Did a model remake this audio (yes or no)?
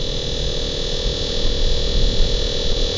no